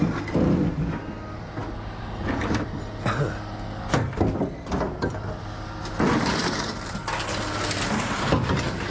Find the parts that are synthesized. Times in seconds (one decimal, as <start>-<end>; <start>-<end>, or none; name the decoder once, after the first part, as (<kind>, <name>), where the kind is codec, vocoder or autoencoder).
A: none